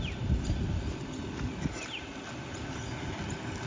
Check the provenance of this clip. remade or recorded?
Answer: recorded